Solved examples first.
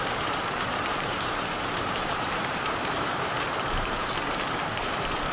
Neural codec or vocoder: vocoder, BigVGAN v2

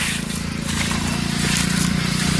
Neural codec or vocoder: vocoder, BigVGAN v2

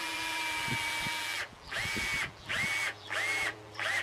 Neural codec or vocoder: vocoder, BigVGAN v2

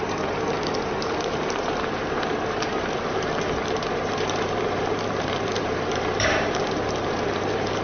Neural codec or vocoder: vocoder, BigVGAN v2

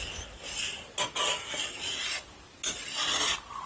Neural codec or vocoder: none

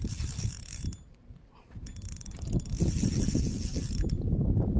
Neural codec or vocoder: vocoder, BigVGAN v2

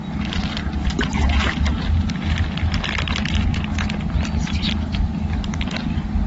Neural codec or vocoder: none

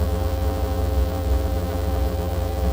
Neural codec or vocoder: vocoder, BigVGAN v2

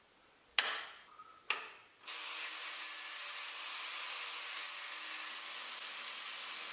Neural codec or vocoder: none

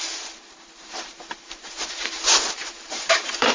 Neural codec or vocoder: vocoder, BigVGAN v2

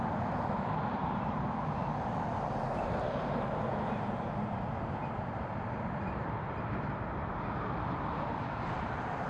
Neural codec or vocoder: vocoder, BigVGAN v2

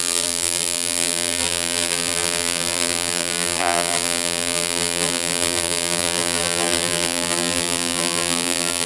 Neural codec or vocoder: vocoder, BigVGAN v2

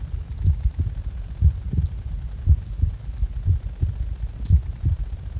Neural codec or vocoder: none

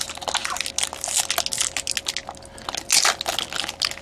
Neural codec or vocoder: none